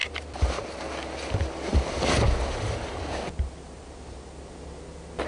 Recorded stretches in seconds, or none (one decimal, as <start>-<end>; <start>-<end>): 0.0-5.3